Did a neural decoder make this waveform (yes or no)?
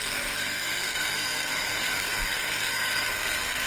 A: yes